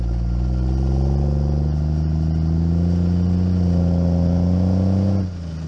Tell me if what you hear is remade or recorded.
recorded